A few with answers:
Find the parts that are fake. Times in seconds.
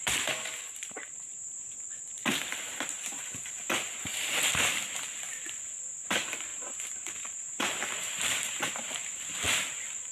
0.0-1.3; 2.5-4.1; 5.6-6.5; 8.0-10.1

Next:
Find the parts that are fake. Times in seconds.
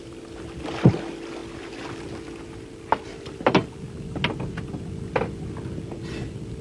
none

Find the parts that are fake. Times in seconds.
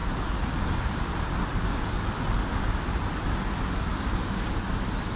none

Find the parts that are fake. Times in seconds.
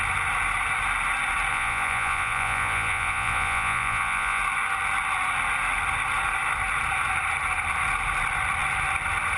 1.5-4.4